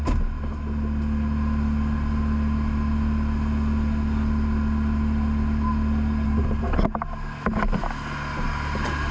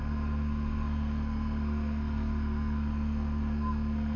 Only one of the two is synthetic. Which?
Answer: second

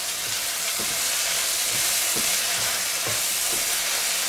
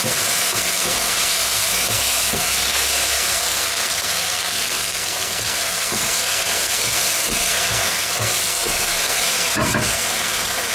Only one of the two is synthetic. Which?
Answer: second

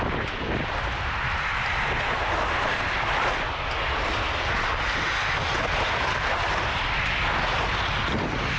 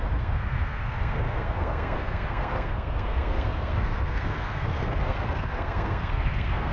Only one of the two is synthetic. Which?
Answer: second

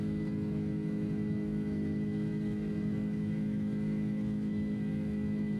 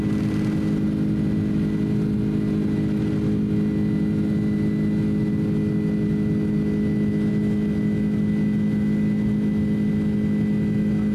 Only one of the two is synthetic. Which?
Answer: first